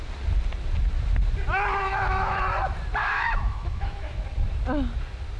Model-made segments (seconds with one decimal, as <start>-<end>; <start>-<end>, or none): 1.8-2.4; 3.0-4.2